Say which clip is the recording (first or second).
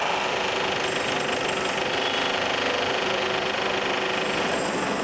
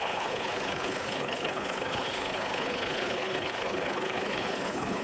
first